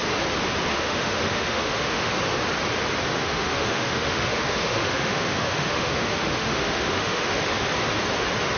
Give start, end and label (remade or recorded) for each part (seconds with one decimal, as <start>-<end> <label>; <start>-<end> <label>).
0.0-0.7 recorded; 0.7-2.1 remade; 2.1-3.2 recorded; 3.2-7.4 remade; 7.4-8.6 recorded